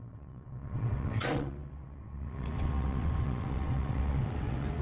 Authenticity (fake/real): fake